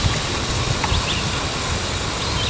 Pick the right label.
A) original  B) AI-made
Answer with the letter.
A